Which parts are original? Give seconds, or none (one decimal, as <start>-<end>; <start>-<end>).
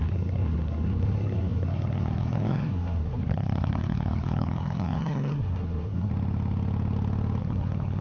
6.1-7.4